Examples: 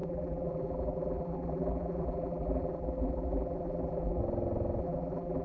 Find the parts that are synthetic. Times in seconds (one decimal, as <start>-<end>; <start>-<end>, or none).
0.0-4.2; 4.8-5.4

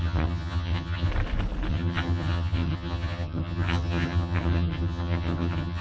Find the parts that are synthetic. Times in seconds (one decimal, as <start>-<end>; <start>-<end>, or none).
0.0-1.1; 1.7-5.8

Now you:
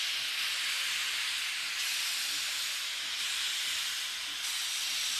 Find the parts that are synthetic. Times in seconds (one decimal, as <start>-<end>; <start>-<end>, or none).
none

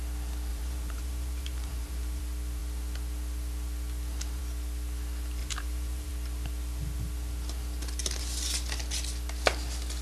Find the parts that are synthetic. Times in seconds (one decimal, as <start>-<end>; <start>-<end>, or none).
0.5-2.2; 5.4-6.1

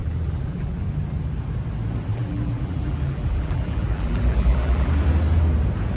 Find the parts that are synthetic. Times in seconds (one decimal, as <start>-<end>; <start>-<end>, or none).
0.0-0.8; 2.1-4.9

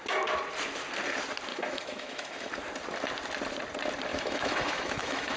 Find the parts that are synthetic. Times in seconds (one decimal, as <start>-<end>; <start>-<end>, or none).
1.5-2.5; 4.1-5.4